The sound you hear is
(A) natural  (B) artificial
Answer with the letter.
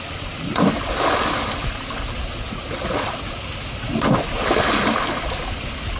A